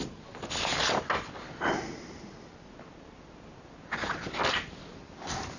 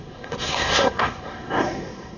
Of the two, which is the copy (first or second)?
second